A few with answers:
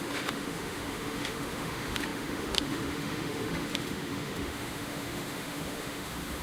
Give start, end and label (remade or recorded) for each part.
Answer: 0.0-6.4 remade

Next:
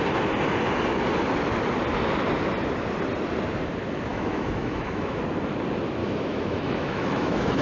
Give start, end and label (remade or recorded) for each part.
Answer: 0.0-4.1 recorded; 4.1-5.2 remade; 5.2-6.0 recorded; 6.0-7.6 remade

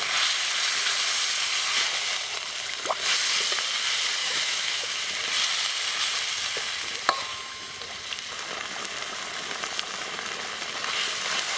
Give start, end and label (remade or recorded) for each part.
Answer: 0.0-4.2 recorded; 4.2-5.0 remade; 5.0-7.3 recorded; 7.3-7.8 remade; 7.8-11.6 recorded

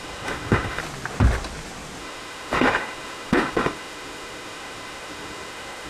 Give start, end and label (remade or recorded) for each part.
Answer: 0.0-0.8 remade; 0.8-2.0 recorded; 2.0-5.9 remade

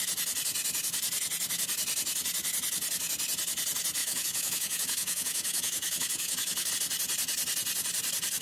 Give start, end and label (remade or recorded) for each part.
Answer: 0.0-4.0 recorded; 4.0-6.7 remade; 6.7-8.4 recorded

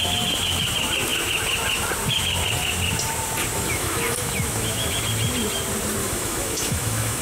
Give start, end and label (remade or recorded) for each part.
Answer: 0.0-3.5 recorded; 3.5-5.0 remade; 5.0-6.0 recorded; 6.0-7.2 remade

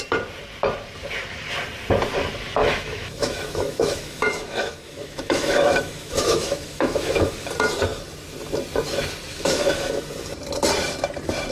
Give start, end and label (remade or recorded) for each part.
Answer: 0.0-2.6 recorded; 2.6-7.5 remade; 7.5-9.3 recorded; 9.3-10.0 remade; 10.0-11.5 recorded